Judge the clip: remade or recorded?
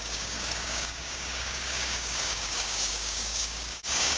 remade